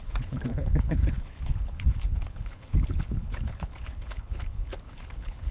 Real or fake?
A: fake